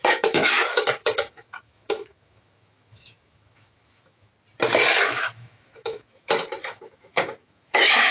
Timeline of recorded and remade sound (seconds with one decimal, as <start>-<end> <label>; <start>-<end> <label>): 0.0-4.3 remade; 4.3-5.0 recorded; 5.0-8.1 remade